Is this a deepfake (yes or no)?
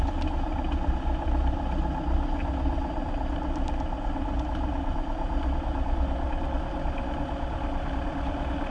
no